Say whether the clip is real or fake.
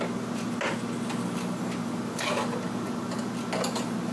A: real